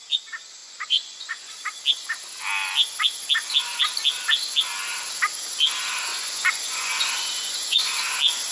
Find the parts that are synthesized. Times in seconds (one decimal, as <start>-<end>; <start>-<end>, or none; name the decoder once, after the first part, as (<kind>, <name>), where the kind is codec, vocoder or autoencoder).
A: 0.6-1.5 (vocoder, Vocos); 6.1-8.0